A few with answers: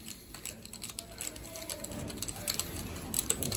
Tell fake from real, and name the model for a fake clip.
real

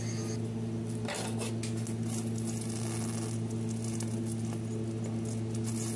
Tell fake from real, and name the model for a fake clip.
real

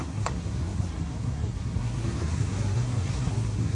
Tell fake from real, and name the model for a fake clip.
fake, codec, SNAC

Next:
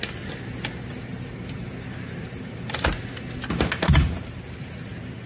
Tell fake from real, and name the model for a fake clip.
real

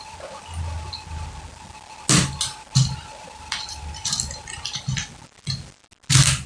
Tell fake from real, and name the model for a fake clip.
real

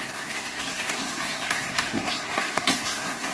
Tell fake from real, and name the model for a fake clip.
fake, codec, SNAC